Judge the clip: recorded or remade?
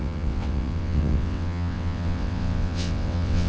remade